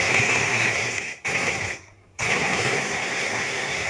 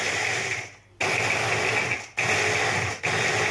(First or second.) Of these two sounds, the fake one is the first